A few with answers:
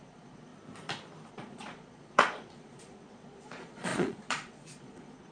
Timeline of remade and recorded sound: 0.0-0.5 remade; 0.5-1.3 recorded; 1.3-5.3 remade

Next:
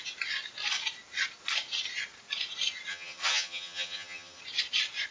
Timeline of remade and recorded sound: 0.0-2.9 recorded; 2.9-4.4 remade; 4.4-5.1 recorded